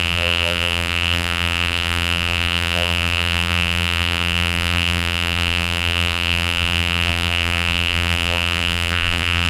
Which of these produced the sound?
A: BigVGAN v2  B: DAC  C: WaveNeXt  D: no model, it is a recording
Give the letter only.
A